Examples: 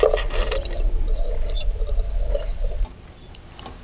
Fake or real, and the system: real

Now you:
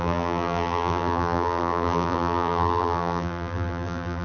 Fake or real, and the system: fake, vocoder, BigVGAN v2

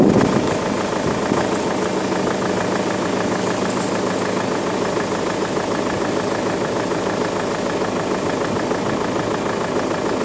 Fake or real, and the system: real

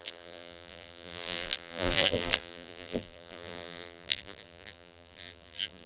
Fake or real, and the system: fake, vocoder, BigVGAN v2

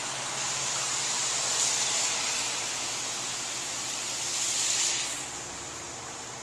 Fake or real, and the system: real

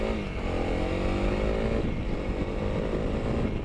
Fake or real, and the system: real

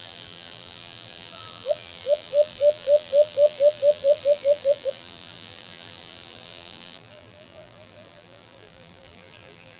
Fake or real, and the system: fake, vocoder, BigVGAN v2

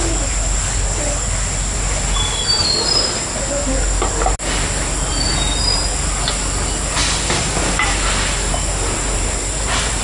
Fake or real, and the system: real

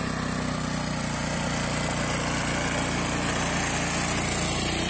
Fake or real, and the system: real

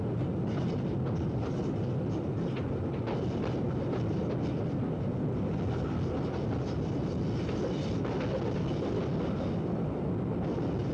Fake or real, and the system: real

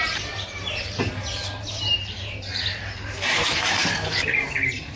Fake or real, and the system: fake, vocoder, BigVGAN v2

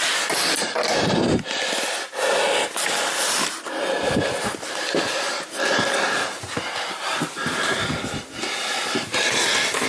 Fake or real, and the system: real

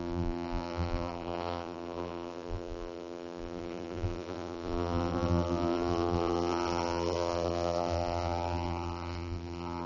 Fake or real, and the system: fake, vocoder, BigVGAN v2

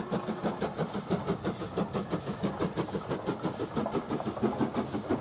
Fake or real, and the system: real